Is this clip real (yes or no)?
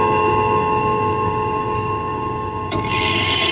no